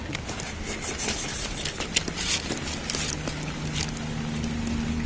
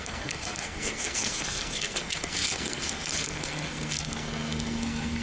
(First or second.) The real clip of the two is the first